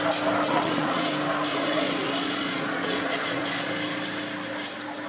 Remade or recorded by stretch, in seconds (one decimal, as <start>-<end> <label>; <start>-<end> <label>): 0.0-0.5 recorded; 0.5-1.1 remade; 1.1-1.5 recorded; 1.5-3.7 remade; 3.7-5.1 recorded